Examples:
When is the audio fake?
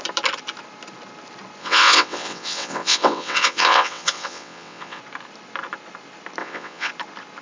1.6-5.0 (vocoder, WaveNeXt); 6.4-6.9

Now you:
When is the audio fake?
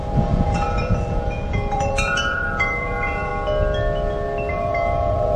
0.0-3.3 (vocoder, Vocos); 4.5-5.4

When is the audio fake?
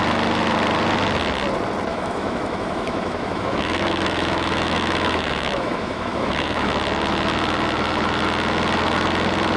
1.9-6.7 (autoencoder, DAC-VAE)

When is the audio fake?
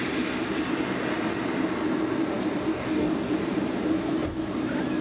2.7-3.4 (codec, DAC)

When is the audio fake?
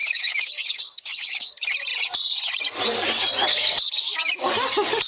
0.0-1.5 (codec, DAC); 3.5-4.5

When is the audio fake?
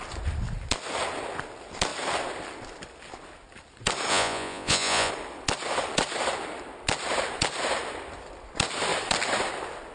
4.1-5.1 (vocoder, Vocos)